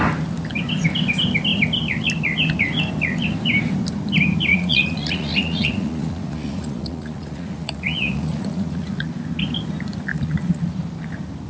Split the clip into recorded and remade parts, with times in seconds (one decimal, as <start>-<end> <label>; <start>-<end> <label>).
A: 0.0-4.5 recorded; 4.5-9.1 remade; 9.1-10.1 recorded; 10.1-10.7 remade; 10.7-11.5 recorded